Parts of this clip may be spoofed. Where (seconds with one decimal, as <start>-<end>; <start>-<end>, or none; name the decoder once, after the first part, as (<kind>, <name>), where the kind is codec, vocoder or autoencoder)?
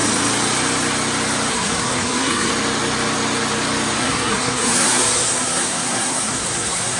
1.5-2.5 (codec, SNAC); 4.0-7.0